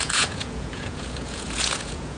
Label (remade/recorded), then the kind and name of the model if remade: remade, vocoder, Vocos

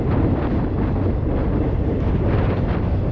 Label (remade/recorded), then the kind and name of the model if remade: recorded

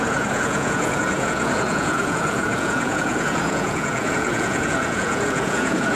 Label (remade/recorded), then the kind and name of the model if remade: remade, vocoder, Vocos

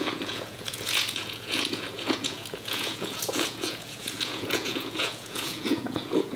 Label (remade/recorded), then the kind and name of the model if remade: remade, vocoder, Vocos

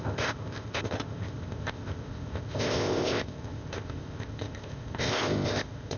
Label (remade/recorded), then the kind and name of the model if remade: remade, codec, ZipCodec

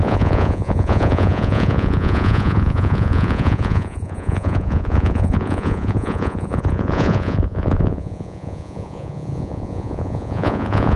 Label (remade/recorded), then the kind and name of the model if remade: remade, vocoder, Vocos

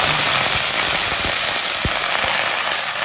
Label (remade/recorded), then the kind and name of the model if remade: recorded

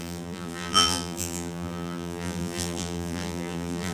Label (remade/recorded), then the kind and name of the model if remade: remade, vocoder, BigVGAN v2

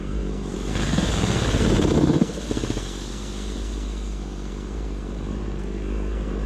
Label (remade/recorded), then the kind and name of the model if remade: remade, codec, SNAC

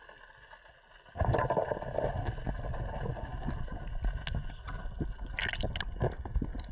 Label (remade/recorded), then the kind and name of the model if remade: recorded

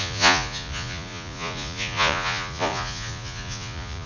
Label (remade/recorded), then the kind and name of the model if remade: remade, vocoder, Vocos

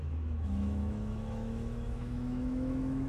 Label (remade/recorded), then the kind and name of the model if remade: remade, autoencoder, DAC-VAE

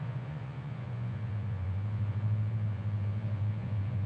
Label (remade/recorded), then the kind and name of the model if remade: remade, vocoder, Vocos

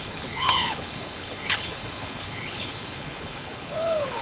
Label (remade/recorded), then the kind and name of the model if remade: remade, codec, HILCodec